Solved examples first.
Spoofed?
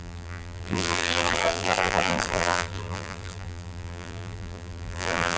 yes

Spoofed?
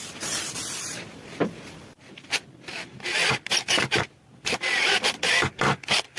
no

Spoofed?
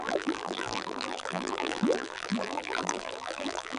yes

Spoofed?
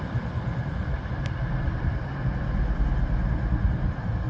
yes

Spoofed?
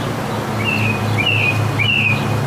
no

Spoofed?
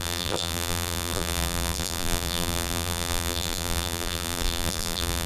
yes